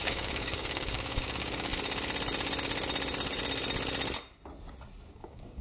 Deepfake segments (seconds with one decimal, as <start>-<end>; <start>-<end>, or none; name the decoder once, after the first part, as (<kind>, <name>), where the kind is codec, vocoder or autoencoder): 0.0-1.7 (codec, DAC); 5.1-5.6